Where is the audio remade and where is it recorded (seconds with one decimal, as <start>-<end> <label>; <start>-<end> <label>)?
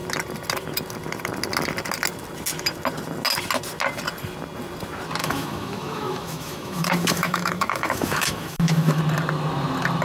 0.0-5.2 recorded; 5.2-9.0 remade; 9.0-10.0 recorded